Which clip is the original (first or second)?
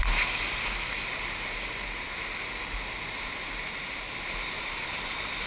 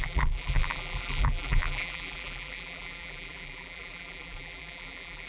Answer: first